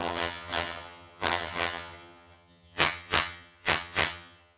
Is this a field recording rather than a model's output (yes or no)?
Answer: no